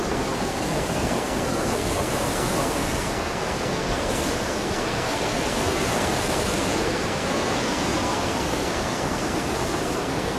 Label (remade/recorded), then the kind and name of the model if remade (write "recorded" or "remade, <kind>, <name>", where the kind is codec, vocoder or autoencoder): remade, codec, SNAC